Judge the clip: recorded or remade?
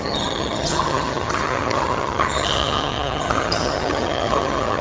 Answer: remade